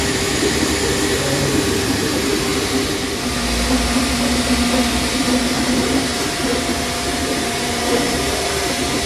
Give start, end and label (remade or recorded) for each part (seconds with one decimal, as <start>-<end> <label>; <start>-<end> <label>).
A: 0.0-2.5 remade; 2.5-4.9 recorded; 4.9-9.1 remade